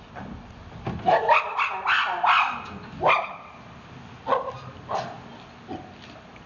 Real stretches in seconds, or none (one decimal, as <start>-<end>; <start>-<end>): 0.0-6.5